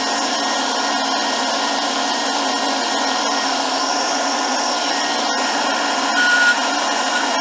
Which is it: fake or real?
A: real